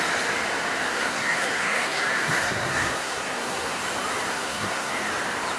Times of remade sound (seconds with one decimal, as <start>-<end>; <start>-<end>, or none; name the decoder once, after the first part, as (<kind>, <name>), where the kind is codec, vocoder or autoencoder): 0.9-3.8 (codec, SNAC); 4.3-4.9